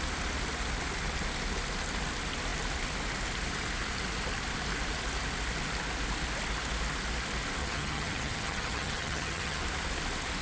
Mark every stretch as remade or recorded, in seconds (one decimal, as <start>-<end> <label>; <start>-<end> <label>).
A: 0.0-7.6 recorded; 7.6-9.6 remade; 9.6-10.4 recorded